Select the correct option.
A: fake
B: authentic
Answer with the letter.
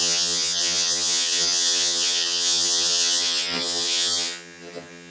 A